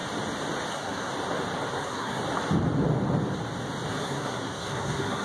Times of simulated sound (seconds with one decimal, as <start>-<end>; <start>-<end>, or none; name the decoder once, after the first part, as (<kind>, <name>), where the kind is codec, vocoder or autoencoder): 0.7-1.1 (codec, SNAC); 1.7-2.2; 3.9-5.2